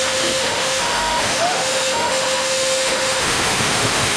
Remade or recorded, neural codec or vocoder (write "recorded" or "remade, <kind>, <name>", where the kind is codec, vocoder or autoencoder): remade, autoencoder, DAC-VAE